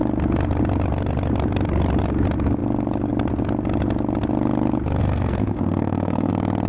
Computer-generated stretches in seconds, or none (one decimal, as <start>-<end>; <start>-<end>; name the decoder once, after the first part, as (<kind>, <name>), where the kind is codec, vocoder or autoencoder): 5.0-6.3 (codec, SNAC)